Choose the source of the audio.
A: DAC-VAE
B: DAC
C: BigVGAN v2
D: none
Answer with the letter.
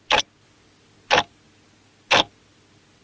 D